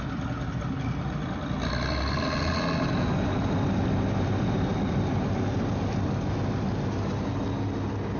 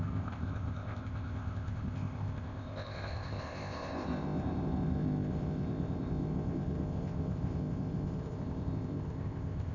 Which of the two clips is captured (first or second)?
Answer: first